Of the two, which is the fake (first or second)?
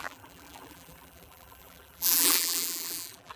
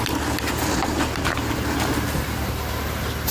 first